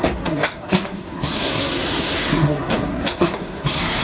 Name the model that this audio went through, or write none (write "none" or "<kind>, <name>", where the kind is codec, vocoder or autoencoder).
codec, SNAC